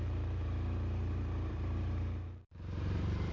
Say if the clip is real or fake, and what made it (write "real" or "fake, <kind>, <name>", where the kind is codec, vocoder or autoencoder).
fake, vocoder, BigVGAN v2